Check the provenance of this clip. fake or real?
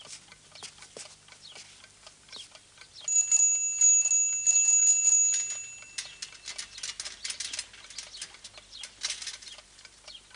real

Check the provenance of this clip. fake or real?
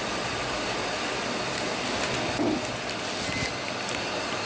real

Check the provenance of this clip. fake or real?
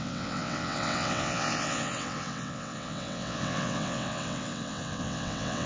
fake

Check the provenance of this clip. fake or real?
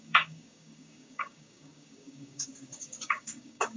fake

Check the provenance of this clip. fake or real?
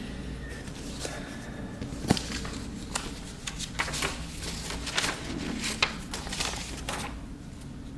real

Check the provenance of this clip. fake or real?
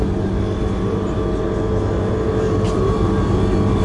real